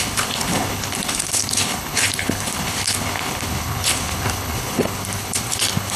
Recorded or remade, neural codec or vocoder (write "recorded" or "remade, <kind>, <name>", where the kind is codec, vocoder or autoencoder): remade, codec, HILCodec